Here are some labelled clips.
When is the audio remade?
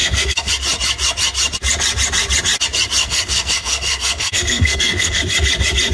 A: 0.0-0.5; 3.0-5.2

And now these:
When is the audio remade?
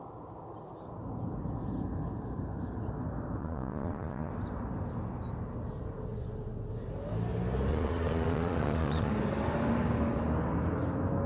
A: 3.4-4.3; 7.7-9.1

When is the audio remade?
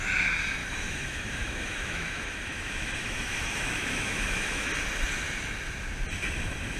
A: 0.6-4.7